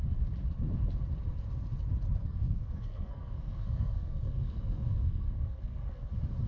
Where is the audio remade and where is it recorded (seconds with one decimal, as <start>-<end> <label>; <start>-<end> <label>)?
0.0-2.2 recorded; 2.2-6.1 remade; 6.1-6.5 recorded